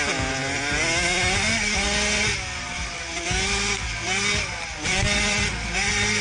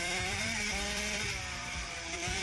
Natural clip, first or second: first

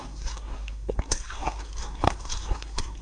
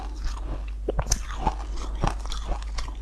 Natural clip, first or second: second